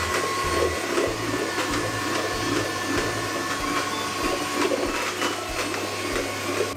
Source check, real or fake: real